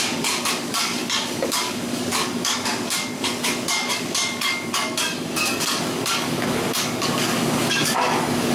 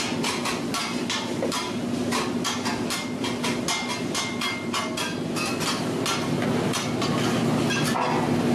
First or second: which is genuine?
second